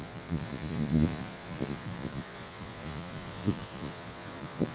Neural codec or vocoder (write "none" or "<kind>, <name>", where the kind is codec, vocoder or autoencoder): vocoder, Vocos